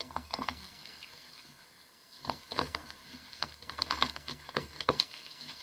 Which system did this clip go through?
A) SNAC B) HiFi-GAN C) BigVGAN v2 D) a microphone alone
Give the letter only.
A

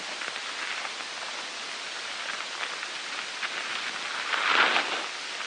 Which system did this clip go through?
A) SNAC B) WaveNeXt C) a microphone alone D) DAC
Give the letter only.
C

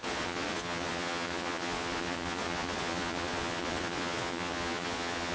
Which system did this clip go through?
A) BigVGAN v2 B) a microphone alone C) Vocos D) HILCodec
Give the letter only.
C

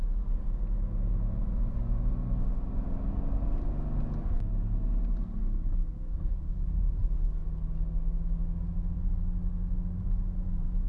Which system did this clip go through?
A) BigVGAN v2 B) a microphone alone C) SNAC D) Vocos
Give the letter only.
B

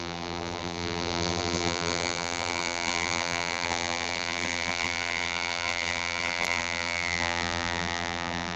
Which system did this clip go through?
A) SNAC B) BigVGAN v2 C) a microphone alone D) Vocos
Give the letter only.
B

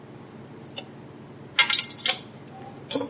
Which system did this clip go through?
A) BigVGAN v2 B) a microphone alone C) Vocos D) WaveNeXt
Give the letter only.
B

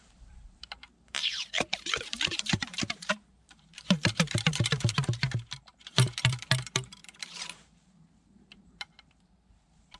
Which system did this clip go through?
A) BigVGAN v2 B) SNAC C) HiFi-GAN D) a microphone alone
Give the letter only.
A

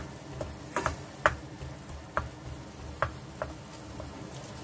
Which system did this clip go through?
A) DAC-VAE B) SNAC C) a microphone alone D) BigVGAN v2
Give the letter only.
C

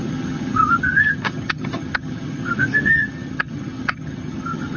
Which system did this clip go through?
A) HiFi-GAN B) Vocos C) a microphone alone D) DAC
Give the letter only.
A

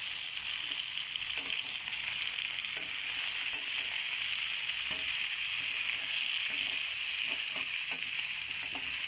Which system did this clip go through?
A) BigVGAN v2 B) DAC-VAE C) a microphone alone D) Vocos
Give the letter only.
C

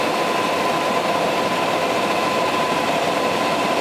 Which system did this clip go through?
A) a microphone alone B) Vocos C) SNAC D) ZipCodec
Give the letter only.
A